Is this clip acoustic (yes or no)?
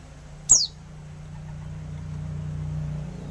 yes